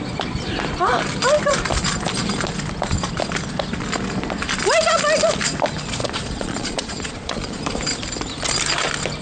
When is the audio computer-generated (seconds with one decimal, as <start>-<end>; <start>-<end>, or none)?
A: 6.0-7.6